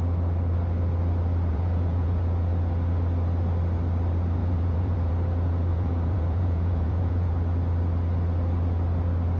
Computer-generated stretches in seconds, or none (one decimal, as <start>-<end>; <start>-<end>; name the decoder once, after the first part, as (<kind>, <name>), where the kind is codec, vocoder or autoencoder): 1.5-2.2 (vocoder, Vocos); 4.4-5.1; 5.7-7.3